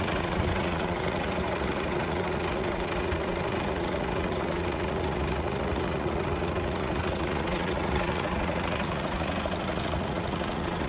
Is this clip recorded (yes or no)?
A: no